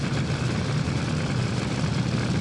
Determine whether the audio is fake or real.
real